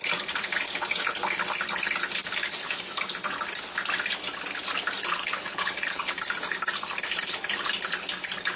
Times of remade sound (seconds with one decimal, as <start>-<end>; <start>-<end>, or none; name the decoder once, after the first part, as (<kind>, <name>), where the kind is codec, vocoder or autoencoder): 5.2-6.1 (codec, HILCodec)